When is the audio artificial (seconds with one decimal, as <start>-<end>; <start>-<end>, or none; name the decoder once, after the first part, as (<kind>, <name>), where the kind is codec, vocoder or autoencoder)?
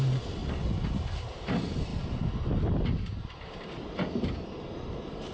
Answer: 0.0-0.4 (vocoder, BigVGAN v2); 1.3-1.9; 3.1-5.3